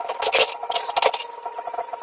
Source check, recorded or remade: recorded